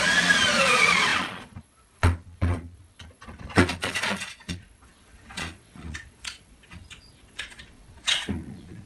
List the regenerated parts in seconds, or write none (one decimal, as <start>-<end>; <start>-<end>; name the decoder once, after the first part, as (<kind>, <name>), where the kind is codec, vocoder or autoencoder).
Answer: 0.0-8.9 (vocoder, Vocos)